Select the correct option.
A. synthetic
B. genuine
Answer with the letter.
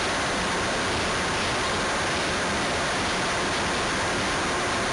B